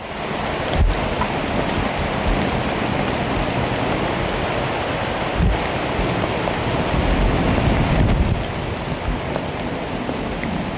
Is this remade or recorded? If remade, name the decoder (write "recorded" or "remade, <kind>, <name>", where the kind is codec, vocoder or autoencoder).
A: recorded